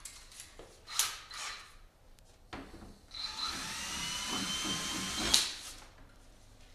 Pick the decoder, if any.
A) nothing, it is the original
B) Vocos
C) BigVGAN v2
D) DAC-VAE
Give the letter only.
A